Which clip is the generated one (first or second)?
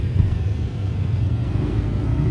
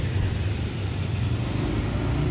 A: first